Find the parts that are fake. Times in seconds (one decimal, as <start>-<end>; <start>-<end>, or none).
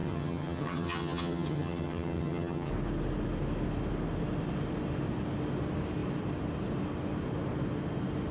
0.0-2.7